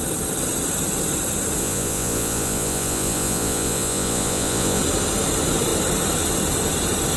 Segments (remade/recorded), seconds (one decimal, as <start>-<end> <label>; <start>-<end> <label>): 0.0-1.6 recorded; 1.6-4.8 remade; 4.8-7.2 recorded